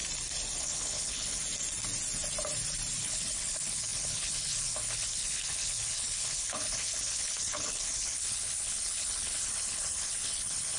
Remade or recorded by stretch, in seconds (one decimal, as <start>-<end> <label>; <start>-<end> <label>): 0.0-0.6 recorded; 0.6-1.4 remade; 1.4-3.0 recorded; 3.0-10.8 remade